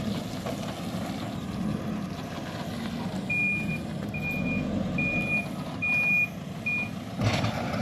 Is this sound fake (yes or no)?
no